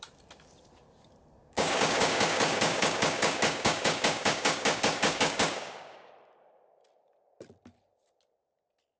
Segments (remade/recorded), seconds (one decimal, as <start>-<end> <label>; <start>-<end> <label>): 0.0-1.4 recorded; 1.4-6.1 remade; 6.1-9.0 recorded